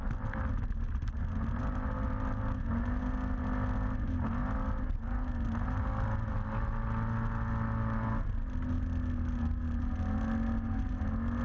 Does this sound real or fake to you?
real